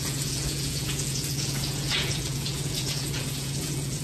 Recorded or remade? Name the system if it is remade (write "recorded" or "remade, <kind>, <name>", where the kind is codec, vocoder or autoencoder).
remade, vocoder, Vocos